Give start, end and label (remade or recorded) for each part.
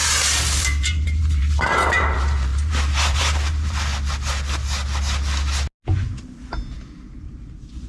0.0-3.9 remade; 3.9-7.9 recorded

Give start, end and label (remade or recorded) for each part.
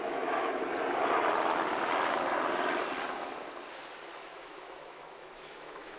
0.0-0.6 remade; 0.6-4.2 recorded; 4.2-6.0 remade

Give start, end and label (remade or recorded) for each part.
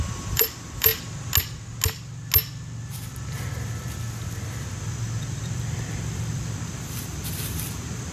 0.0-0.9 remade; 0.9-4.8 recorded; 4.8-8.1 remade